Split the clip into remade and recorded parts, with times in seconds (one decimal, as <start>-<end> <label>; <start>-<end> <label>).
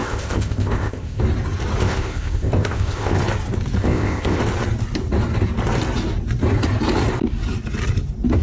0.0-1.2 remade; 1.2-1.8 recorded; 1.8-3.2 remade; 3.2-3.8 recorded; 3.8-4.4 remade; 4.4-8.4 recorded